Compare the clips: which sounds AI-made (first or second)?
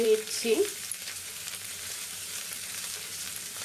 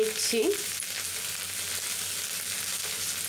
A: first